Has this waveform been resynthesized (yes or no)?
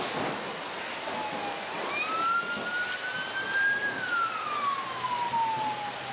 no